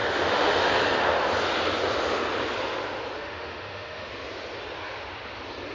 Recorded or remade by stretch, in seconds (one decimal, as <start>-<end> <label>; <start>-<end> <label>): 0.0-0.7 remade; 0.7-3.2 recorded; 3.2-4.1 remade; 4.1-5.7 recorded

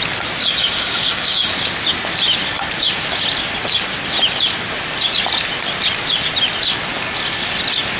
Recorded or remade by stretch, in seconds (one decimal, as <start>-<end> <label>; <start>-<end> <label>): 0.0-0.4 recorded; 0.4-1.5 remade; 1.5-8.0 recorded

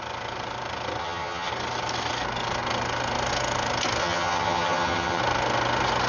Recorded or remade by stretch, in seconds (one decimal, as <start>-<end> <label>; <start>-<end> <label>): 0.0-1.0 recorded; 1.0-1.5 remade; 1.5-4.0 recorded; 4.0-5.2 remade; 5.2-6.1 recorded